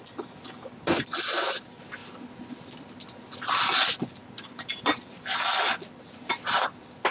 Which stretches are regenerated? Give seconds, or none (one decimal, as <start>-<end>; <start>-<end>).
none